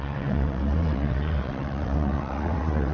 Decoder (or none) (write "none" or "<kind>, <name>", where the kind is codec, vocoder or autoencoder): vocoder, WaveNeXt